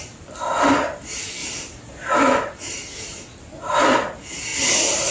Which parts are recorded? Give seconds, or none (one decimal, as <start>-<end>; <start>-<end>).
0.0-1.4; 2.1-5.1